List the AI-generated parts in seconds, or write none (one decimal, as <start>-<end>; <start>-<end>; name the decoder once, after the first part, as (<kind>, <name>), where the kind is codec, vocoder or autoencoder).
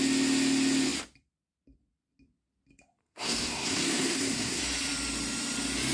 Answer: 3.0-4.6 (codec, SNAC)